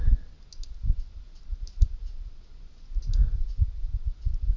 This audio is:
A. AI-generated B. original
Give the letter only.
B